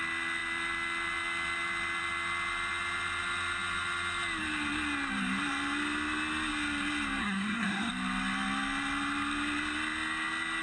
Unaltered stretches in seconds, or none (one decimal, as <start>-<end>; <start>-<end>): 0.0-7.2; 7.9-10.6